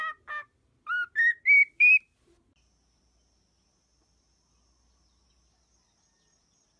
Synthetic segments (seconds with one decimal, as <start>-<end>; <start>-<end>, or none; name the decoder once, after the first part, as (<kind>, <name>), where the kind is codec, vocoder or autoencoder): none